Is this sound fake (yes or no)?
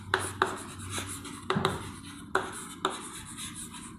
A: no